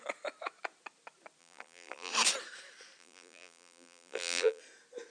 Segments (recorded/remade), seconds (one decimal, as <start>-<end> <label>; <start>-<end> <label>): 0.0-1.4 recorded; 1.4-2.1 remade; 2.1-3.0 recorded; 3.0-4.6 remade; 4.6-5.1 recorded